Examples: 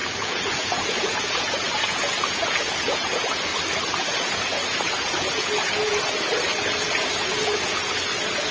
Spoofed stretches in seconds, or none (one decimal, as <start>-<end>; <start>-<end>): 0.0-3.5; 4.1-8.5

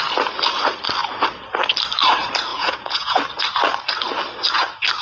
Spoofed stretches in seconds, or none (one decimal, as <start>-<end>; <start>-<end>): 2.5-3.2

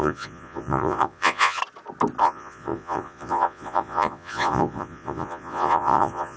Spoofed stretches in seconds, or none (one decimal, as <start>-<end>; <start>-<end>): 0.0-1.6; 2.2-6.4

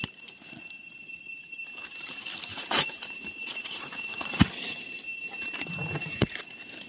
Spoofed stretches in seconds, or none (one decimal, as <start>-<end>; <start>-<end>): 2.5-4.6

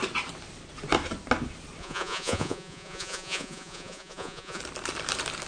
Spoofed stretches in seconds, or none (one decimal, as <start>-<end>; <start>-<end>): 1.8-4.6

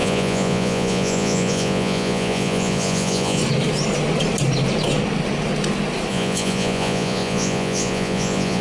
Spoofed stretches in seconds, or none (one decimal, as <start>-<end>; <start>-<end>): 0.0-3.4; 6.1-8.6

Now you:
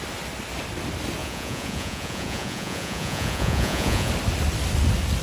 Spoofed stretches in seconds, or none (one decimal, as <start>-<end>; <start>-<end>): 1.2-4.1